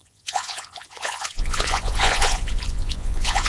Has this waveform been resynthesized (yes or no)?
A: yes